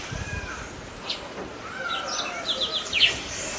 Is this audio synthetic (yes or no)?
no